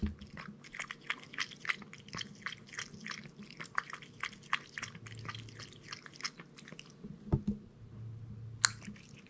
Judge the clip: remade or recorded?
recorded